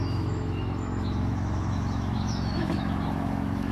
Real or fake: fake